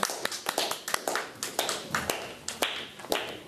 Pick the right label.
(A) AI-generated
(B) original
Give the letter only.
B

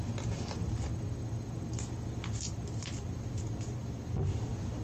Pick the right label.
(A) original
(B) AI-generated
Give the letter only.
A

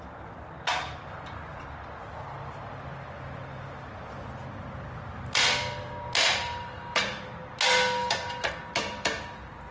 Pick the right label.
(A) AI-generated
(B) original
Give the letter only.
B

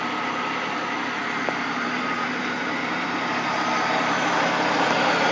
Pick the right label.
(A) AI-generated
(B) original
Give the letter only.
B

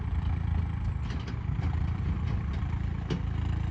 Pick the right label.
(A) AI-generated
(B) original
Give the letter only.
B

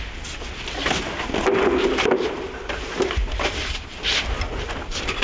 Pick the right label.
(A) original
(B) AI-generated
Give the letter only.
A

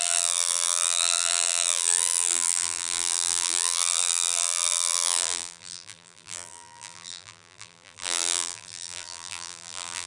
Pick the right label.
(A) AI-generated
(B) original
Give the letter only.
A